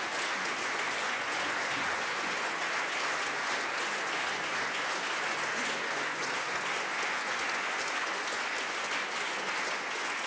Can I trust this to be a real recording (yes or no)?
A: no